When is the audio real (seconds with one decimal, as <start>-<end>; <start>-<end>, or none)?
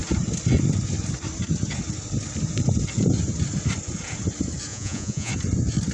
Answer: 0.0-4.7; 5.3-5.9